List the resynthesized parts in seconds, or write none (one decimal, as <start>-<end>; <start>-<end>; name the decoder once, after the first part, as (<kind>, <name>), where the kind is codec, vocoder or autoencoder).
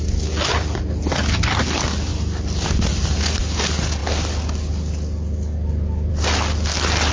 none